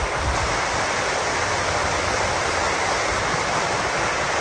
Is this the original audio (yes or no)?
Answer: yes